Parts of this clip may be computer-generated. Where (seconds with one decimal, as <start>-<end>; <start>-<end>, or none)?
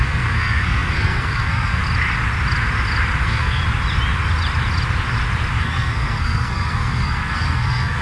0.0-1.8; 3.2-3.6; 5.6-8.0